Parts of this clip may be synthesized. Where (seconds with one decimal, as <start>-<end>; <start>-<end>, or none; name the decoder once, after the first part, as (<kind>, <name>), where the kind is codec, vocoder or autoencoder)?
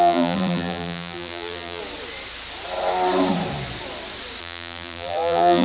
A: 0.0-1.8 (vocoder, BigVGAN v2); 4.4-5.6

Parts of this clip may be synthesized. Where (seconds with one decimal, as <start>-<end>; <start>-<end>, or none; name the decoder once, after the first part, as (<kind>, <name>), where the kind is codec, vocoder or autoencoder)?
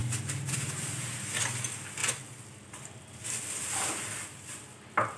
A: 0.0-1.2 (vocoder, BigVGAN v2)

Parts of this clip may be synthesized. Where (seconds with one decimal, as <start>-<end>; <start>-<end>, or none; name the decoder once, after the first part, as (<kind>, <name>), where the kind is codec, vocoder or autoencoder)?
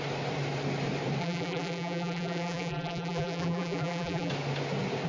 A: 1.2-4.3 (vocoder, BigVGAN v2)